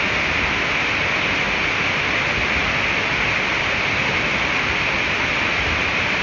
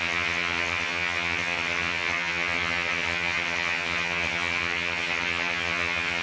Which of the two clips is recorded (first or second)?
first